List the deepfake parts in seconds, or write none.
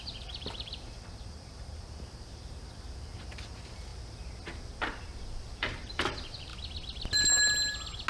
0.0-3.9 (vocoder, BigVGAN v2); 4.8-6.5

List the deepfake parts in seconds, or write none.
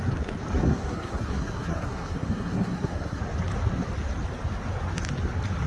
0.6-3.2 (codec, SNAC)